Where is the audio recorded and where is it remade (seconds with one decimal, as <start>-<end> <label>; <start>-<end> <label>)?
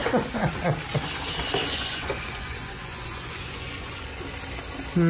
0.0-0.5 remade; 0.5-1.6 recorded; 1.6-4.2 remade; 4.2-5.1 recorded